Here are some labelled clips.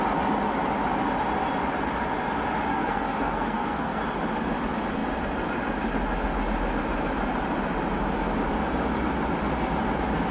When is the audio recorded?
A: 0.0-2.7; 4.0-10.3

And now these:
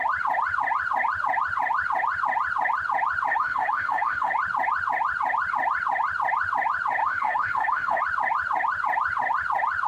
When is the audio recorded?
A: 0.0-3.3; 4.3-7.0; 8.0-9.9

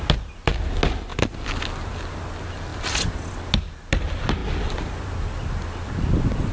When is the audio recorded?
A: 0.0-1.1; 1.6-2.7; 3.3-4.4; 5.9-6.5